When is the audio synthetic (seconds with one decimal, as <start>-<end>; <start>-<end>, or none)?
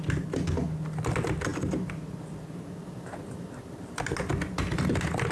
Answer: none